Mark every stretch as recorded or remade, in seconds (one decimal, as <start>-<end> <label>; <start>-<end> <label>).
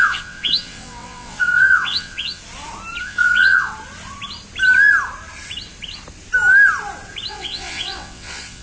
0.0-2.4 remade; 2.4-3.0 recorded; 3.0-3.7 remade; 3.7-7.3 recorded; 7.3-8.6 remade